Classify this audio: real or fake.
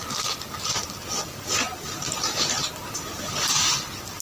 real